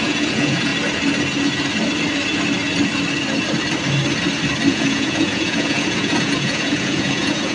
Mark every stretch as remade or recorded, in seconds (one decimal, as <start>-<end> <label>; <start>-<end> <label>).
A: 0.0-0.7 remade; 0.7-4.7 recorded; 4.7-7.5 remade